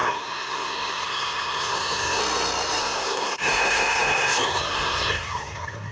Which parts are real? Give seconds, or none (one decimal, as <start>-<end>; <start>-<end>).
2.2-2.8